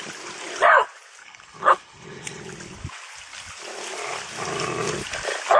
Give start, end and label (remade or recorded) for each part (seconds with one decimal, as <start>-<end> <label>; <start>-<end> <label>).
0.0-1.2 recorded; 1.2-2.4 remade; 2.4-5.6 recorded